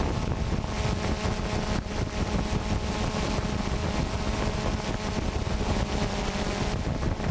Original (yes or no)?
yes